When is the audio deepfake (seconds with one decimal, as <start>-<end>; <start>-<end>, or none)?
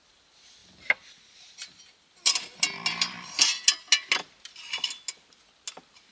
0.6-1.8